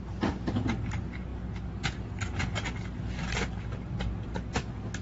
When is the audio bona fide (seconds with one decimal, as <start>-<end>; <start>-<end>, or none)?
0.0-5.0